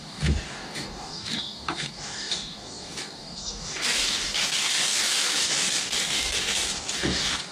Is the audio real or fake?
fake